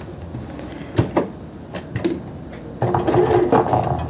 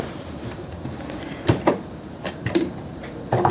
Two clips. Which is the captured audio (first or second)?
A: first